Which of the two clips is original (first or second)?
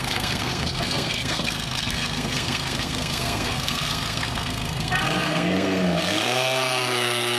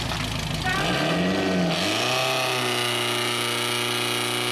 second